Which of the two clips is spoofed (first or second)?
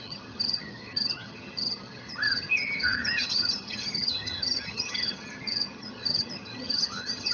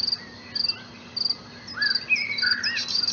first